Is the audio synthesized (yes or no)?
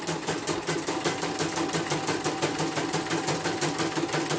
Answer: no